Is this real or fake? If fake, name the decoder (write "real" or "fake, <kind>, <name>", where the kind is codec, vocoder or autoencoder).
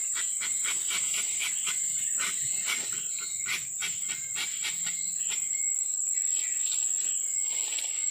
real